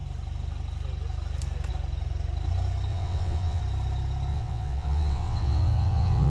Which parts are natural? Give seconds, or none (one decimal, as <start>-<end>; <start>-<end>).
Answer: 0.0-2.9; 3.6-4.3